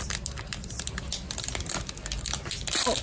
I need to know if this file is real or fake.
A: real